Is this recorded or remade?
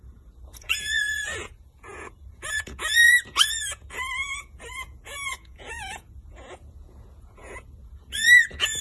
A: remade